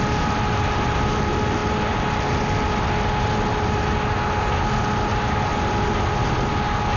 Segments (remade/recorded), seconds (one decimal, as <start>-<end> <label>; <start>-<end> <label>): 0.0-7.0 recorded